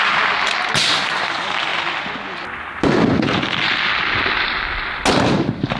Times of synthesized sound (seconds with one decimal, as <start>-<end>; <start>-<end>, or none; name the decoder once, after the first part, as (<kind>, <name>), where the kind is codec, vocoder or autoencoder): none